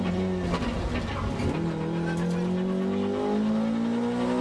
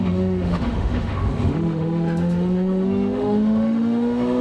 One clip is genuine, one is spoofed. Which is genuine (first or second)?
first